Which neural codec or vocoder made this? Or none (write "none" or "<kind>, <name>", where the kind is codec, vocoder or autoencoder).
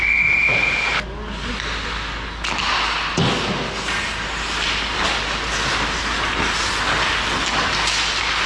none